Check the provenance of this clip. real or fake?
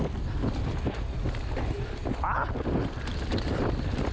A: real